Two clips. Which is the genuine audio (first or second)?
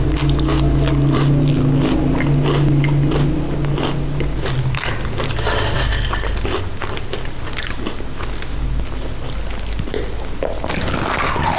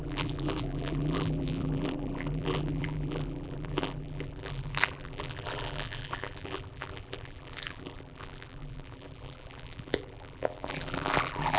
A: first